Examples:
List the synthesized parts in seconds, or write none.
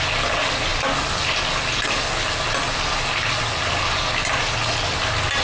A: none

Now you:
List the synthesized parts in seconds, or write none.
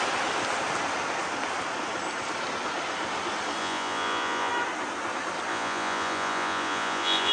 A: 3.6-4.5 (vocoder, Vocos); 5.5-7.3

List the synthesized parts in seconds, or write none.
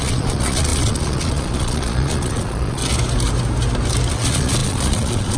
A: 0.0-2.8 (vocoder, Vocos); 4.1-5.4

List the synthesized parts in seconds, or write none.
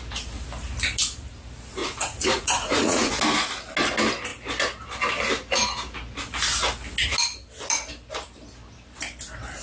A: 1.8-3.1 (vocoder, Vocos)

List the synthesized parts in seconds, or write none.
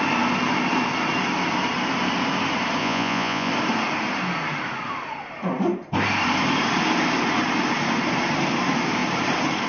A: 2.8-3.5 (vocoder, Vocos)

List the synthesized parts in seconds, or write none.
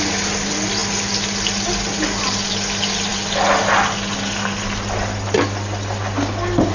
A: none